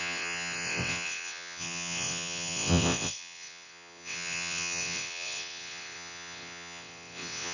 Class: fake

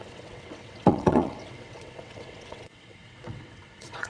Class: fake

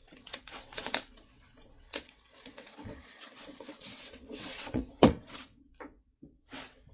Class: fake